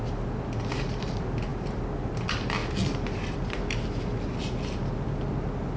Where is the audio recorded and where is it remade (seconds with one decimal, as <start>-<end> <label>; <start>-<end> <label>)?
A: 0.0-5.8 recorded